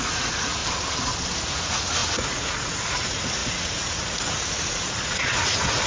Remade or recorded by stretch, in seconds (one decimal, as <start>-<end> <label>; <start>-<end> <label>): 0.0-0.6 remade; 0.6-1.5 recorded; 1.5-5.9 remade